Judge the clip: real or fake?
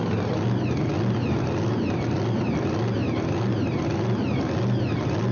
real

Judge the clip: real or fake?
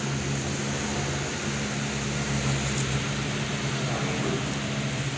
real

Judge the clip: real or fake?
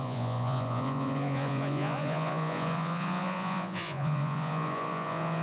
fake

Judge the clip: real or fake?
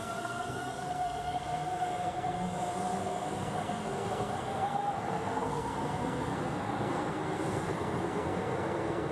fake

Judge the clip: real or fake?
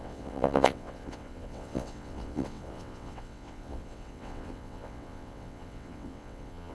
fake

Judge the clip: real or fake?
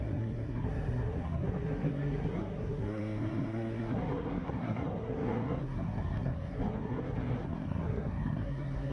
fake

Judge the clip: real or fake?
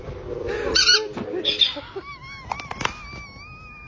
real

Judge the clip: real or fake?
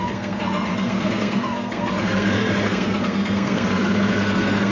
fake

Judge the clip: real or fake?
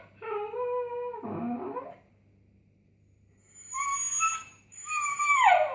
real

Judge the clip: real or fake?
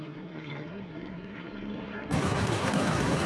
fake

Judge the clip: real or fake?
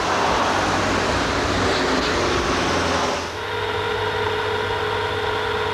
real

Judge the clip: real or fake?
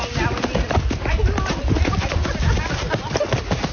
real